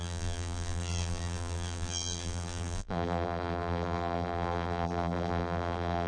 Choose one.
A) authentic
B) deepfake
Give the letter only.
B